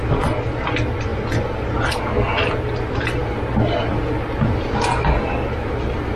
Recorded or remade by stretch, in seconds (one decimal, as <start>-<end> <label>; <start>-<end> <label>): 0.0-6.2 recorded